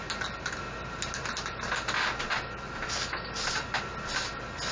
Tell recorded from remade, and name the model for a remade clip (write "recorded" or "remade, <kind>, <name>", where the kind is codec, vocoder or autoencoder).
recorded